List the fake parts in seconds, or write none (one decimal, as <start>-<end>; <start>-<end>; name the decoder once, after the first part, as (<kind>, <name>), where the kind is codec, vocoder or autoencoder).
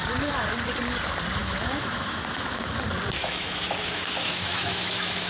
1.4-2.7 (autoencoder, DAC-VAE); 3.2-5.3